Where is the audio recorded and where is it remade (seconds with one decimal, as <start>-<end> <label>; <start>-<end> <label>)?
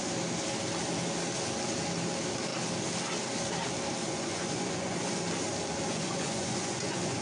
0.0-4.0 recorded; 4.0-5.2 remade; 5.2-5.9 recorded; 5.9-7.2 remade